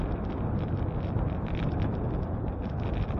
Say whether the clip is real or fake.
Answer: real